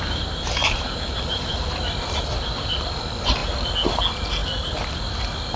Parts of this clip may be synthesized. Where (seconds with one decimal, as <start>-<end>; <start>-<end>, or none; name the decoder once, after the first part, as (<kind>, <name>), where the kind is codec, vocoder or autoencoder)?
none